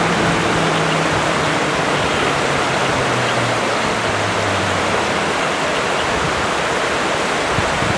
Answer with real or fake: real